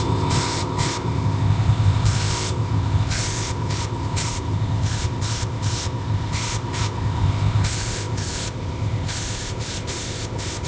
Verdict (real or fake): fake